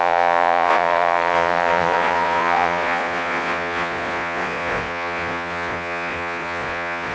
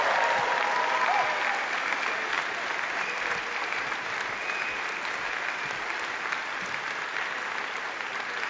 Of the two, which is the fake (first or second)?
first